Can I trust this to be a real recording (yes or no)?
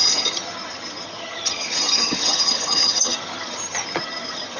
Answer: no